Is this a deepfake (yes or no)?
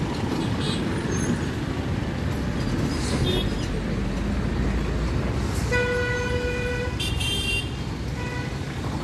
no